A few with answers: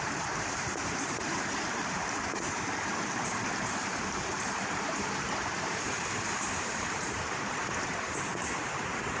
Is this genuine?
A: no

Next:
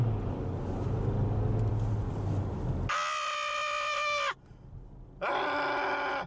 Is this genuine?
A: yes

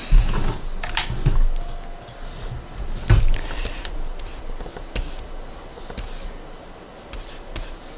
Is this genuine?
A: yes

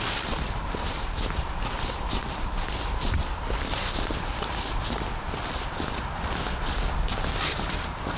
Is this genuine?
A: no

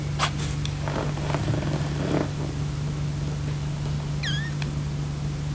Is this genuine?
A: yes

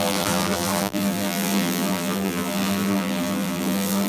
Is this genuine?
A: no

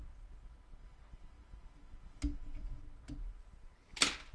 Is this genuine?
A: yes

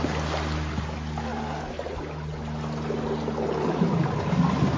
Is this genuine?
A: yes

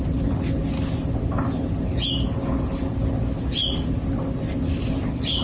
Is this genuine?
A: yes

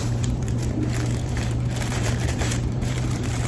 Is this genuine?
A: no